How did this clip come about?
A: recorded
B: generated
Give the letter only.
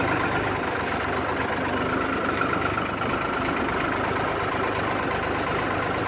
A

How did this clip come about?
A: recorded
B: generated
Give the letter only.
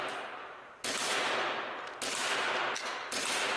A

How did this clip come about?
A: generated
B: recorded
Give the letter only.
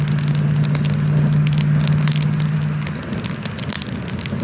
B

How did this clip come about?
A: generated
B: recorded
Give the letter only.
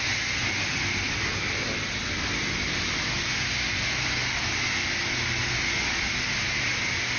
B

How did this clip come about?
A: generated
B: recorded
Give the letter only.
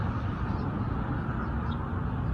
B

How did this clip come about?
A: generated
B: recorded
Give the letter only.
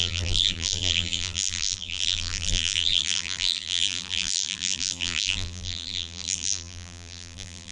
A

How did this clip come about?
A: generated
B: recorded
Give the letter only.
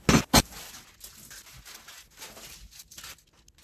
B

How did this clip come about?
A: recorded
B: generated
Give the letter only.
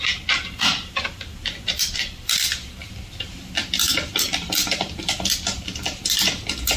B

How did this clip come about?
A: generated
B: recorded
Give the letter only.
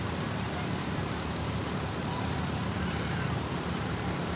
A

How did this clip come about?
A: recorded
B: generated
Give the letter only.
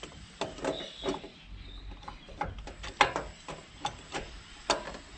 A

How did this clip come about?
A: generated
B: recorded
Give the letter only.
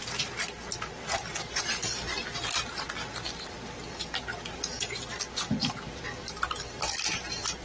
A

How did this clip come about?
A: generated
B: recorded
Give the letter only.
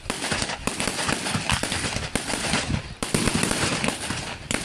A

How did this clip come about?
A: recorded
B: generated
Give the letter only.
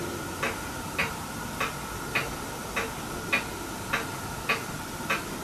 A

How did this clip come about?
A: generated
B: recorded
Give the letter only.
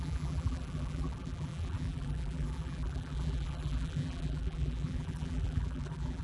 A